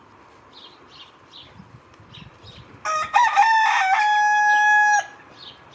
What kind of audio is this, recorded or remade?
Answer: recorded